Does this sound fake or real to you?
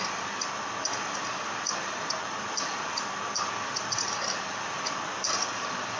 real